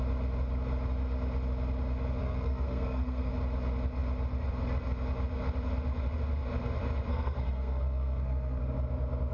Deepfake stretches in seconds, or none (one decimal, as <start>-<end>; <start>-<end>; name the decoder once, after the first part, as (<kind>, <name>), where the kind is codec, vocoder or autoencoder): 2.2-3.3 (codec, SNAC); 7.1-8.6